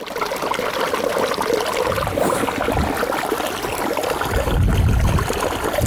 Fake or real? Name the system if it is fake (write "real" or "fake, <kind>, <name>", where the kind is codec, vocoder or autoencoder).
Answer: real